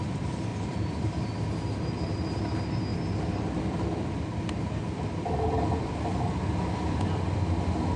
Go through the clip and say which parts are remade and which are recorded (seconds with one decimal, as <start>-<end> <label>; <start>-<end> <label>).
0.0-0.5 recorded; 0.5-1.3 remade; 1.3-2.9 recorded; 2.9-5.3 remade; 5.3-8.0 recorded